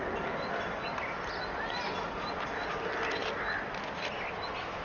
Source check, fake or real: real